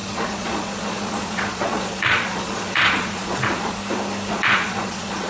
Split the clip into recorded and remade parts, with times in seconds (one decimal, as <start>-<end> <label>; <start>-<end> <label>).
0.0-3.8 remade; 3.8-4.3 recorded; 4.3-5.3 remade